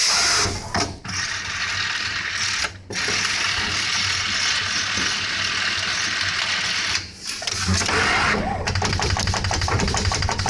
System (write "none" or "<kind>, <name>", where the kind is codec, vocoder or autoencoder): none